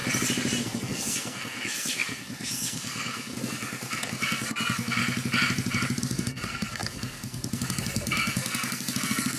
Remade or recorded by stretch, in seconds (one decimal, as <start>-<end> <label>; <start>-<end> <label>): 0.0-0.6 recorded; 0.6-5.0 remade; 5.0-6.0 recorded; 6.0-9.4 remade

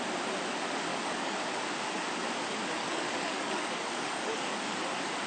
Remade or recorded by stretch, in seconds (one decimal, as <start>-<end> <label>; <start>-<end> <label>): 0.0-0.9 recorded; 0.9-1.4 remade; 1.4-2.8 recorded; 2.8-4.8 remade; 4.8-5.3 recorded

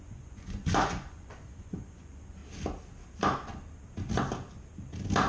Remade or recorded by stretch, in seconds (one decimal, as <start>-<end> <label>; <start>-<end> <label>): 0.0-2.4 remade; 2.4-5.3 recorded